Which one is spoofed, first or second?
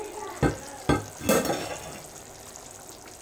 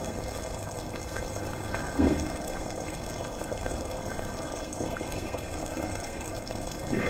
second